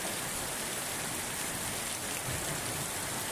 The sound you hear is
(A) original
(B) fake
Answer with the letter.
A